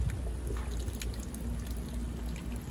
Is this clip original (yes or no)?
yes